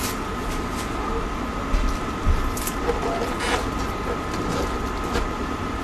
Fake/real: real